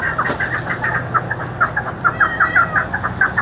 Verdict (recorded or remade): recorded